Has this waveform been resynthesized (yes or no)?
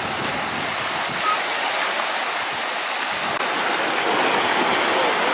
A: no